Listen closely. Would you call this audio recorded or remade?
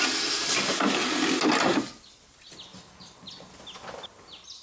recorded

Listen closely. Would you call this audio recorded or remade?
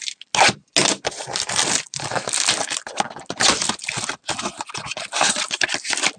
recorded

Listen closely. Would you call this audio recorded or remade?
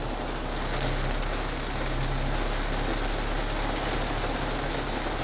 recorded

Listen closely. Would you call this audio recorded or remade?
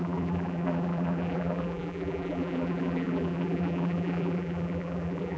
remade